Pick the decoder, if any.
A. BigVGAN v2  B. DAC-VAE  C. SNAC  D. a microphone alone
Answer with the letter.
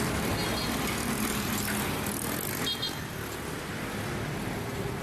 D